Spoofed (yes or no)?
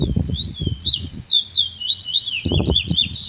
yes